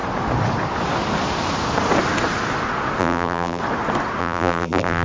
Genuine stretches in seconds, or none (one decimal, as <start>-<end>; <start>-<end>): 0.0-3.0; 3.6-4.2